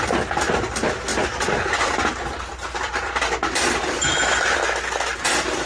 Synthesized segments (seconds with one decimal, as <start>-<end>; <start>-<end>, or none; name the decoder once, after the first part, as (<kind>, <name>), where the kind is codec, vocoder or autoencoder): 1.1-4.5 (vocoder, BigVGAN v2)